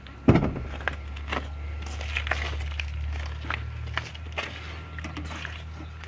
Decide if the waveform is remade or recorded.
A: recorded